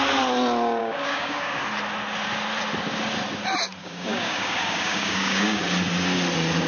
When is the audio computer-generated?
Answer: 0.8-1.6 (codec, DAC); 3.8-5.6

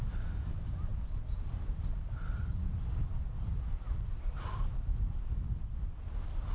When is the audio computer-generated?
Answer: none

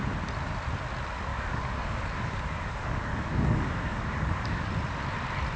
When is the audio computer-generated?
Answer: 1.3-4.7 (codec, DAC)